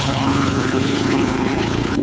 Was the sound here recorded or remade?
remade